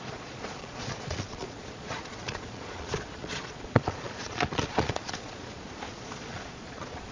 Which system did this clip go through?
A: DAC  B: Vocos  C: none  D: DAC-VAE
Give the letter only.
B